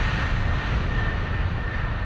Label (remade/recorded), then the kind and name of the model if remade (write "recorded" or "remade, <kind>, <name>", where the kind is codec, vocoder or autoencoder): recorded